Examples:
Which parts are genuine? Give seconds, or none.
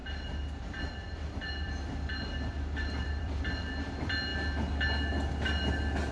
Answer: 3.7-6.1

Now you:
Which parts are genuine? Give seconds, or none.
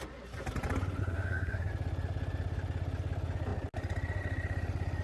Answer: 0.0-1.0; 1.7-5.0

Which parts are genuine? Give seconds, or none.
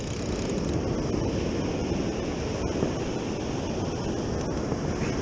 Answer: 0.0-5.2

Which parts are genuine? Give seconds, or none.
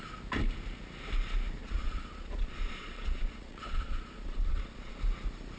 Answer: 0.0-1.6; 5.0-5.6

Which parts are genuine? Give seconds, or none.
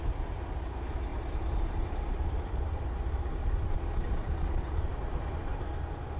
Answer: 0.0-1.1; 3.7-4.9; 5.7-6.2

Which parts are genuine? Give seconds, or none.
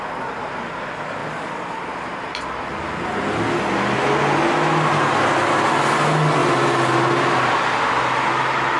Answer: 0.0-8.8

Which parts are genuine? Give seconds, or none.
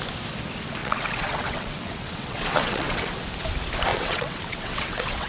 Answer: 0.0-0.8; 3.1-3.9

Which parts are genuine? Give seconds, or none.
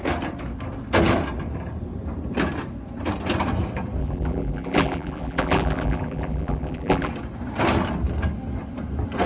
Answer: 0.0-4.0; 7.1-9.3